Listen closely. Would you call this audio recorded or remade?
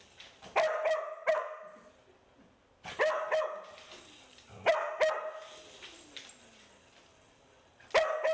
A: recorded